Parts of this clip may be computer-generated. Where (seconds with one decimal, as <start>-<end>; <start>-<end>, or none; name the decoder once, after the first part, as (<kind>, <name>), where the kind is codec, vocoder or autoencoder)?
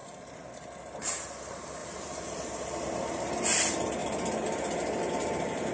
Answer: 1.8-3.3 (vocoder, BigVGAN v2); 4.0-5.7